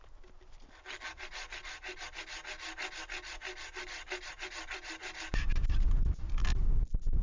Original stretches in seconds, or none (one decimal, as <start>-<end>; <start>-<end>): 0.0-7.2